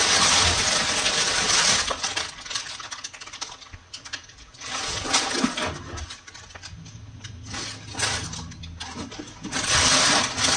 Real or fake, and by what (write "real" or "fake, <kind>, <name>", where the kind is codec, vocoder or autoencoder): real